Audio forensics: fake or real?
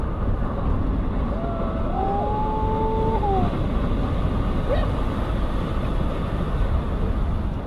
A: real